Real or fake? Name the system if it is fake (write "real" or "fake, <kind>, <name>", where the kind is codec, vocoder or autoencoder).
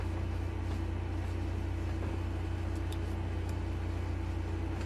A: real